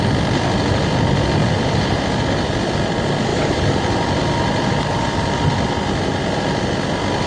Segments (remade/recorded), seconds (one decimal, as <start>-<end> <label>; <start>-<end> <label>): 0.0-1.4 recorded; 1.4-2.0 remade; 2.0-3.3 recorded; 3.3-4.2 remade; 4.2-7.3 recorded

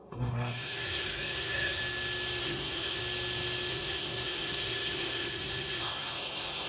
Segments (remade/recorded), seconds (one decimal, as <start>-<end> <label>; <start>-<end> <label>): 0.0-1.8 remade; 1.8-2.4 recorded; 2.4-3.0 remade; 3.0-3.7 recorded; 3.7-6.7 remade

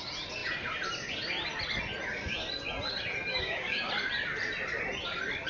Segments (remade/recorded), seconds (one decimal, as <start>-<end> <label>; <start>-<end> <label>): 0.0-3.3 recorded; 3.3-3.9 remade; 3.9-5.5 recorded

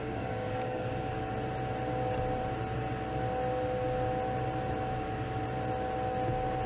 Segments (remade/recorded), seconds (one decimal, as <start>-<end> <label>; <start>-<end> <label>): 0.0-1.3 remade; 1.3-6.7 recorded

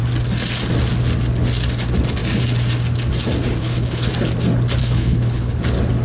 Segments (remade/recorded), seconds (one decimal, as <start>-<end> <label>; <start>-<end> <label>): 0.0-3.6 recorded; 3.6-4.1 remade; 4.1-4.8 recorded; 4.8-5.6 remade; 5.6-6.0 recorded

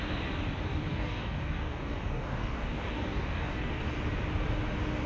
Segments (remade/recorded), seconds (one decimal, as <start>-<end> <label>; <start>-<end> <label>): 0.0-0.7 recorded; 0.7-3.8 remade; 3.8-5.1 recorded

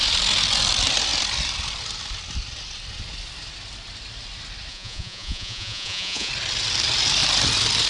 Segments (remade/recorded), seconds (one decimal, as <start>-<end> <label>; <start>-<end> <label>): 0.0-4.7 recorded; 4.7-6.3 remade; 6.3-7.9 recorded